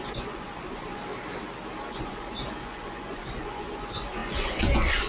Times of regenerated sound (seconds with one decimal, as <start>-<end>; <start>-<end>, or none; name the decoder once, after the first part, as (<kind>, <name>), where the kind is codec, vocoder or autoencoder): 0.0-1.0 (vocoder, Vocos); 1.9-5.1